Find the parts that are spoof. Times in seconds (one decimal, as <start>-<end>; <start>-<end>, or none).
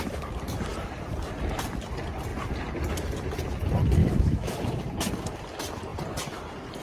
4.0-4.8